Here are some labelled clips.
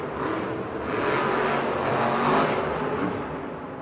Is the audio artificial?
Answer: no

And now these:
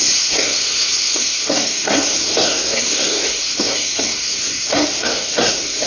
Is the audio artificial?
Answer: yes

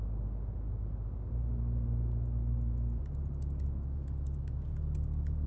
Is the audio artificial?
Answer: no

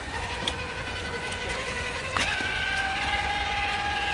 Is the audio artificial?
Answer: yes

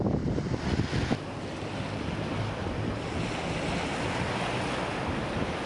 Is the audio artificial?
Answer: no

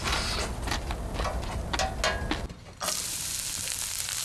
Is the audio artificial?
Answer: no